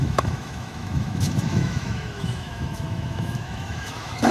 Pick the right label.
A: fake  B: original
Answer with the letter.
A